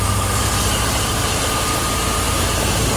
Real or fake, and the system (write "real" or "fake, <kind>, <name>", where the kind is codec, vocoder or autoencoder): fake, vocoder, BigVGAN v2